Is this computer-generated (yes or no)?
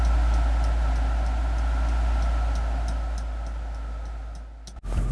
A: no